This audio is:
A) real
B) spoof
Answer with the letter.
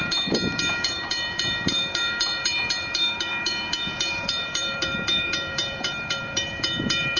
B